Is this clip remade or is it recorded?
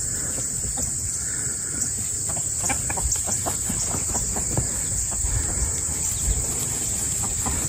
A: remade